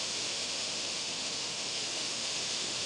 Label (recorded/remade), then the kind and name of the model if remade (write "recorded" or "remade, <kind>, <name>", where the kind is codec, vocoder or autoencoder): remade, autoencoder, DAC-VAE